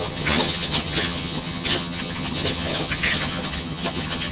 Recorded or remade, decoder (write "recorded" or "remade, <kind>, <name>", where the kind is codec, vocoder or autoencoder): remade, vocoder, HiFi-GAN